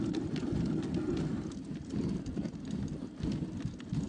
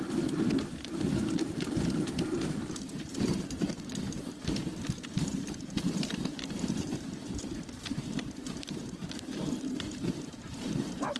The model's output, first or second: second